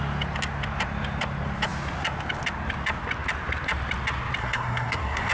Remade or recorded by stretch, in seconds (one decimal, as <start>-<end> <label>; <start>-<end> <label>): 0.0-4.4 recorded; 4.4-5.3 remade